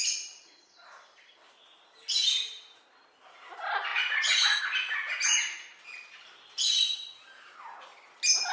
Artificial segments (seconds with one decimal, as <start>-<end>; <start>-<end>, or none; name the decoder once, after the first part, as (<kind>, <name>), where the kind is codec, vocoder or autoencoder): 3.9-4.6 (vocoder, Vocos)